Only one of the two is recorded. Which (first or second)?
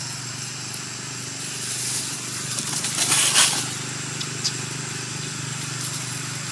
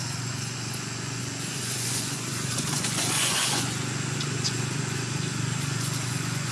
first